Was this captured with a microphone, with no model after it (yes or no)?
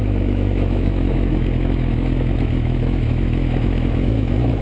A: no